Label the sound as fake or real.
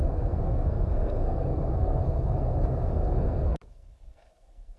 fake